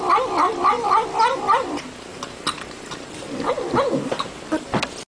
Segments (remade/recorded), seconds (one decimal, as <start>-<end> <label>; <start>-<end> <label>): 0.0-5.1 recorded